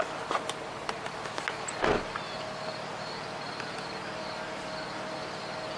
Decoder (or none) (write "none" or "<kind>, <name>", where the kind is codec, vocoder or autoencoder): none